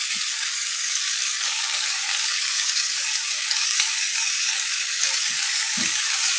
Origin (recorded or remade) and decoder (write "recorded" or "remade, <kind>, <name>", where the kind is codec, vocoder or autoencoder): remade, codec, DAC